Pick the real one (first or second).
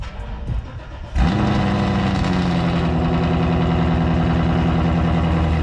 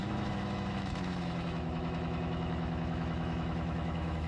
first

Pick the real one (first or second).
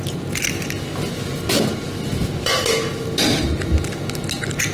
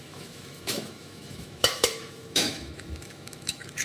first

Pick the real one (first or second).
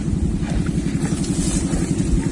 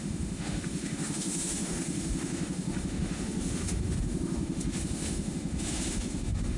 first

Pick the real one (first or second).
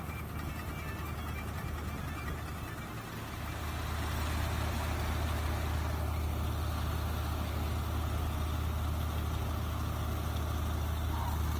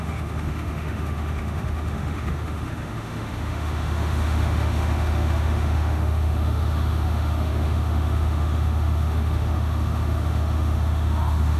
first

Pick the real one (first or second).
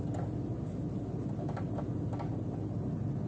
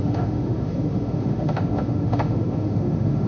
first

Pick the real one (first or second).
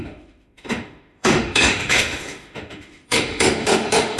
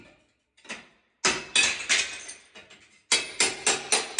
second